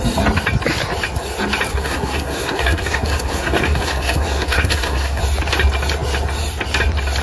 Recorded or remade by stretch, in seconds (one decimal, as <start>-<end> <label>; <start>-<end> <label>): 0.0-1.7 recorded; 1.7-5.2 remade; 5.2-7.2 recorded